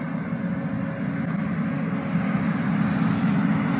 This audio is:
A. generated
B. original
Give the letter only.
B